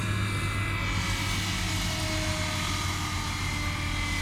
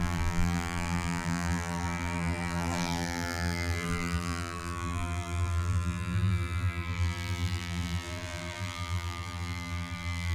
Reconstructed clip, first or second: second